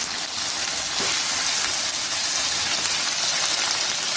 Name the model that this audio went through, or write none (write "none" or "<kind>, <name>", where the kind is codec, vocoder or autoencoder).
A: none